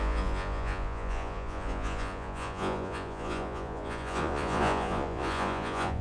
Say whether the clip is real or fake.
fake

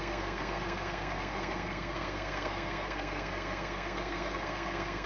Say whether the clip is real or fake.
fake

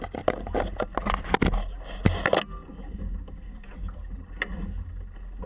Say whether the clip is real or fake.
real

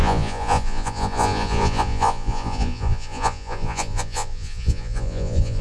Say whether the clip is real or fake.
fake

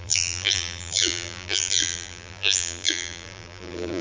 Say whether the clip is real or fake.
fake